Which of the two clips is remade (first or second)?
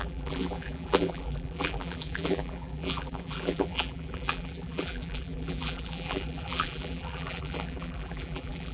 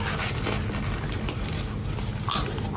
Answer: first